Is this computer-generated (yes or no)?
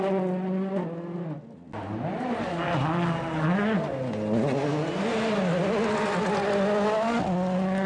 no